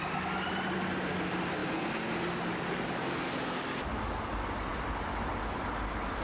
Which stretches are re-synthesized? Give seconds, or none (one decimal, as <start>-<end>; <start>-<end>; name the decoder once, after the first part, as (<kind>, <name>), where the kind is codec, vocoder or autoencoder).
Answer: none